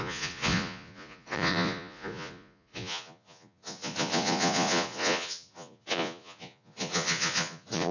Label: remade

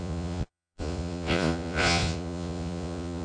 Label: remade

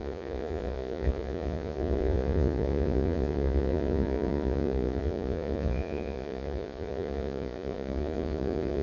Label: remade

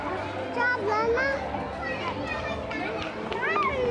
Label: recorded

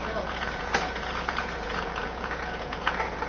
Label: remade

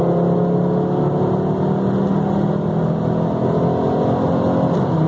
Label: recorded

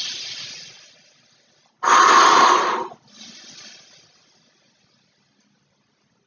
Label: recorded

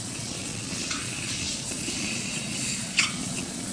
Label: remade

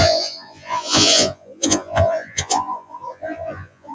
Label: remade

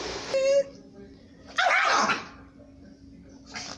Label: recorded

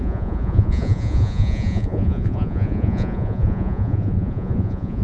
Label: remade